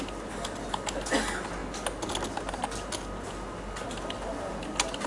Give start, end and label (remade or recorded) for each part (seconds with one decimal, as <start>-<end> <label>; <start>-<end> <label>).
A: 0.0-5.1 recorded